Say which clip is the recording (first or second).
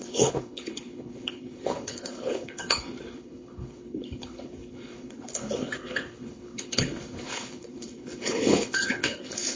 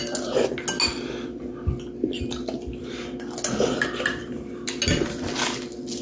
second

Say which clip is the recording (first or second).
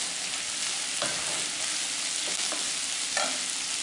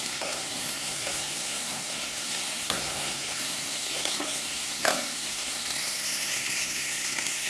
first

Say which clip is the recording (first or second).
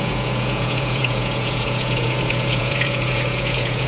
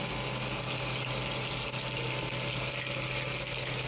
second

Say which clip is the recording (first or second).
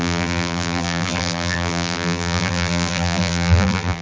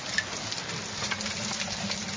second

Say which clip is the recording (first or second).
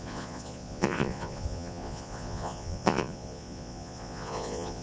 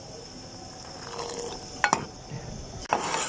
second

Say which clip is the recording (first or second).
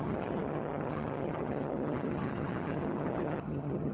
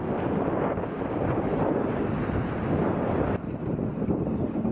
second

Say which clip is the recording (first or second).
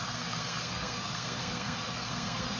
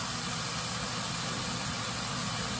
second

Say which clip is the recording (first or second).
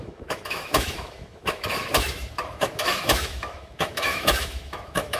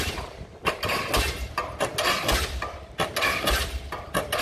second